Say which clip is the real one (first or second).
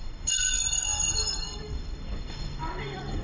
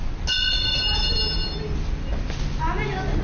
second